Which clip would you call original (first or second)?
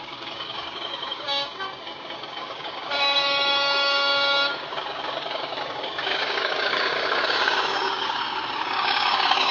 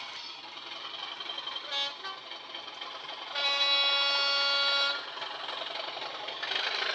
second